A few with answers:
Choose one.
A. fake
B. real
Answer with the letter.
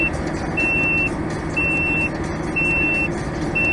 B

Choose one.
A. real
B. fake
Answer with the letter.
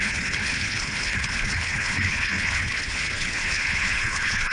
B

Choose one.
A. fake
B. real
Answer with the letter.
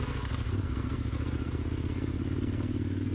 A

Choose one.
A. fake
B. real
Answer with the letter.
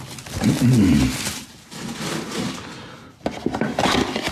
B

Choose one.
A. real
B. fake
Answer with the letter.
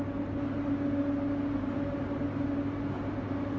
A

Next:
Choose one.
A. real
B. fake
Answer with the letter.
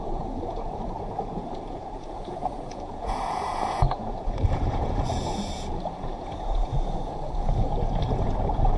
B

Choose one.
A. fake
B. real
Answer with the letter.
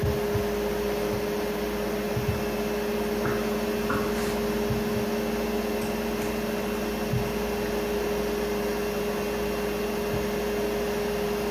B